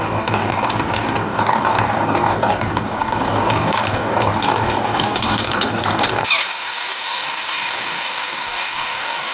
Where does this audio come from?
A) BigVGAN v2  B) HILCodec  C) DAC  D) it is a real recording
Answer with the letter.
C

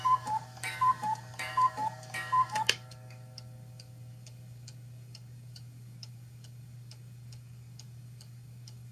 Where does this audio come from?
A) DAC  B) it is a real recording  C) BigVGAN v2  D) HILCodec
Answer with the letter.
A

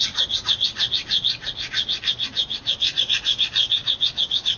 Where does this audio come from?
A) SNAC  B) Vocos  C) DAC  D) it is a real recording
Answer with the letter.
D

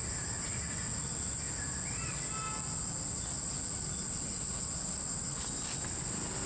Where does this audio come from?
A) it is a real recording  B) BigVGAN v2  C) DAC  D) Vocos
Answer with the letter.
A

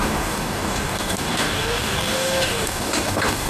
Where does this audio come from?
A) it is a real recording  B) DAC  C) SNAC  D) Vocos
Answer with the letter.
B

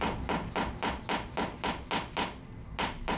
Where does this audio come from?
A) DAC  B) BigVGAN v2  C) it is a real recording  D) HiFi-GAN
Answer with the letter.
C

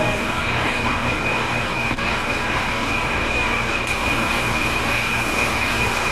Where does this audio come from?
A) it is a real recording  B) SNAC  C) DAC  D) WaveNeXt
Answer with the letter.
C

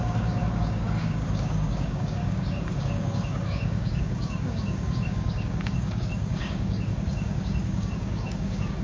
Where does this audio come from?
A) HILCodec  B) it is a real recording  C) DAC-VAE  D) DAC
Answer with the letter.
D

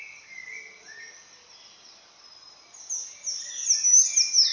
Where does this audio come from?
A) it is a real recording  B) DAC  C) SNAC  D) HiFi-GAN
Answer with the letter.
A